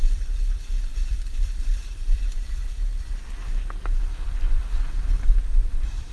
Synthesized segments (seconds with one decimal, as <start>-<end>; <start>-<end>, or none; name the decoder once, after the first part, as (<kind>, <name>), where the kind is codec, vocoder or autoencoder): 0.9-2.2 (vocoder, BigVGAN v2)

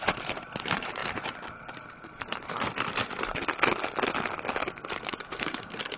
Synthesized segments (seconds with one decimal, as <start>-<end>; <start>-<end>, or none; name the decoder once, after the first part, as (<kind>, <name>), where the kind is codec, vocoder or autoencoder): 0.0-3.4 (vocoder, BigVGAN v2); 5.0-6.0